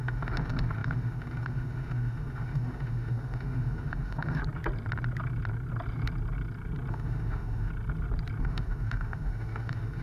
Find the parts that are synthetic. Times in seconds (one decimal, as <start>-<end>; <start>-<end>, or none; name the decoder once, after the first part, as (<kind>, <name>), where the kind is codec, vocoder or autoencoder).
0.0-4.4 (autoencoder, DAC-VAE); 6.9-7.7; 8.4-10.0